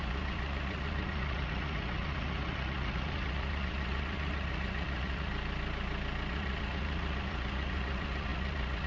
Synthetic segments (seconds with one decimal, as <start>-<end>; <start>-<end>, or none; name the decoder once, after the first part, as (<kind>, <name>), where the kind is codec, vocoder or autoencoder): 0.0-5.3 (vocoder, Vocos); 6.3-8.9